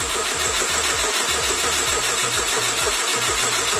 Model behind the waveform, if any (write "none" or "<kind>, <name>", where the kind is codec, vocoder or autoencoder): vocoder, BigVGAN v2